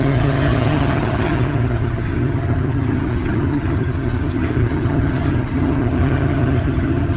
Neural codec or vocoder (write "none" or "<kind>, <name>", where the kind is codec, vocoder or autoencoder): vocoder, HiFi-GAN